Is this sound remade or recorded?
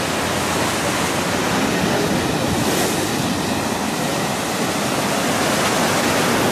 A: recorded